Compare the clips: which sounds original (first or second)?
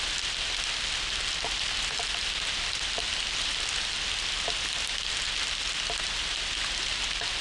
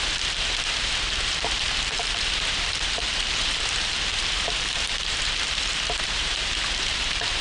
first